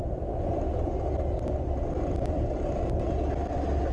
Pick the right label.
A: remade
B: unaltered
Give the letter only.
B